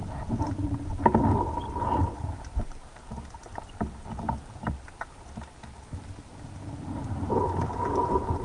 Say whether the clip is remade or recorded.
recorded